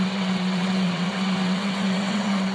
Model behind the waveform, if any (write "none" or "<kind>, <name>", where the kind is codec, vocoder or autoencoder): vocoder, WaveNeXt